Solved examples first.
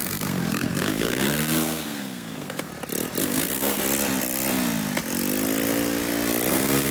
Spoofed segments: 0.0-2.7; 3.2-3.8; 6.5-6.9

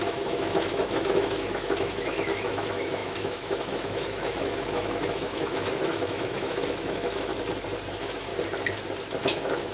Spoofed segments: 0.0-7.3; 7.9-8.3; 9.2-9.7

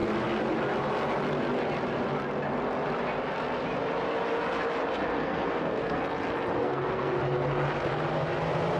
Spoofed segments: 5.2-6.0; 6.6-7.2

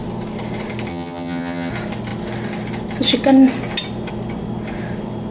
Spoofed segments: 0.9-1.7